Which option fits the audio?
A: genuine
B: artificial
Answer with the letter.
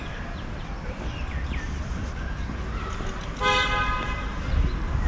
A